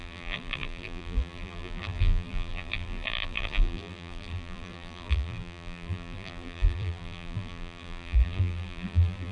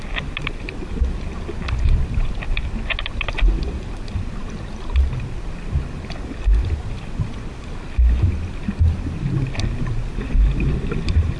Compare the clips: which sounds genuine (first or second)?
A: second